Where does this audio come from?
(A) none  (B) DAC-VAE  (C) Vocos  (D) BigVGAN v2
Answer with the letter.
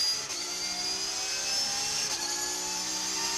A